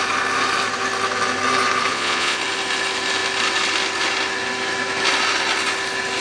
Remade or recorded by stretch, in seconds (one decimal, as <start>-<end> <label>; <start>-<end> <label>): 0.0-1.9 recorded; 1.9-2.4 remade; 2.4-6.2 recorded